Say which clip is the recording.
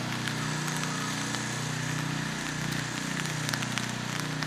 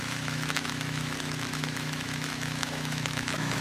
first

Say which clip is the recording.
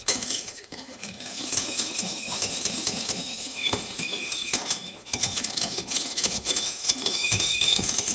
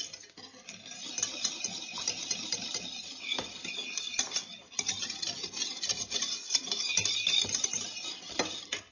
second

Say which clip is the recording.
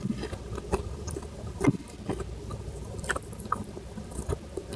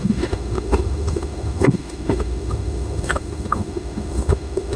first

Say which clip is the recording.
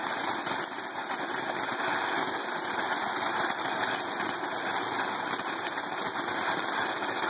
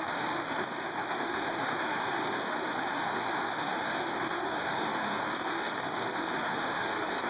first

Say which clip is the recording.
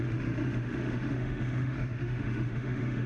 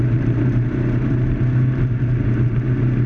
second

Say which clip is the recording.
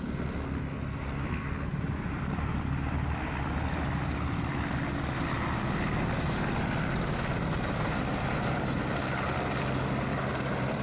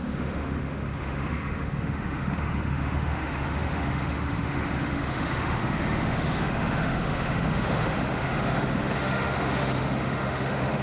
first